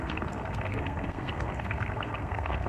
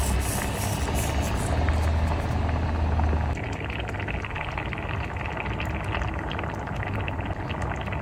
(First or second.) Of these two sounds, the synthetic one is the first